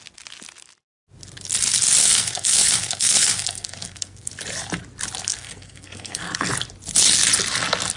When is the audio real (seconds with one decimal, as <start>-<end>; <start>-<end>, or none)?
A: 0.0-2.0; 4.3-5.3; 6.5-8.0